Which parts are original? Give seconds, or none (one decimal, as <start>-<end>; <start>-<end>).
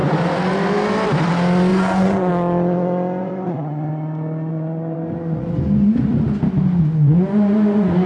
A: 0.0-1.7; 2.3-3.2; 3.9-4.5; 5.5-8.1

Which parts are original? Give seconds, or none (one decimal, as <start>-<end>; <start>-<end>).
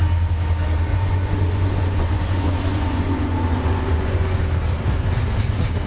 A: 0.0-0.9; 4.4-5.9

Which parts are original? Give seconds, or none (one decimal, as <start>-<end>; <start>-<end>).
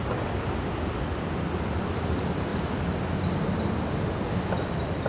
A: 2.5-3.6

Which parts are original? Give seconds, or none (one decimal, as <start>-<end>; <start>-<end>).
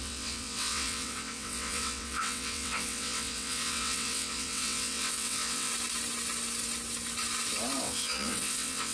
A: 5.7-7.8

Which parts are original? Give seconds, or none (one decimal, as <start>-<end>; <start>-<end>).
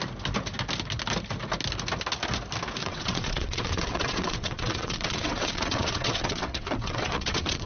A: 0.0-2.8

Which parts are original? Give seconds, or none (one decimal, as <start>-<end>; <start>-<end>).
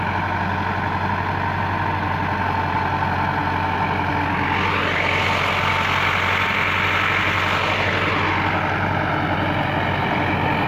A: 0.0-10.7